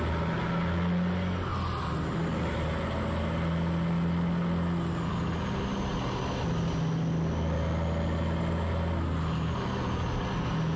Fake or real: real